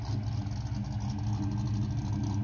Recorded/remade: recorded